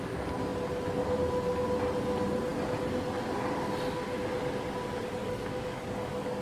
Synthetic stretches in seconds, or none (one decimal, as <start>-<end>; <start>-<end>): 5.2-6.4